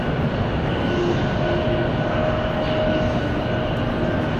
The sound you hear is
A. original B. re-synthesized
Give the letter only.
A